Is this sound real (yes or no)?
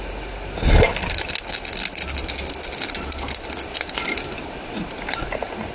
yes